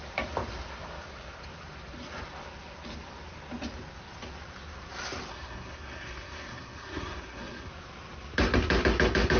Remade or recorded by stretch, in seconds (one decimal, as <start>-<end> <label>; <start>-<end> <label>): 0.0-5.3 recorded; 5.3-7.7 remade; 7.7-9.4 recorded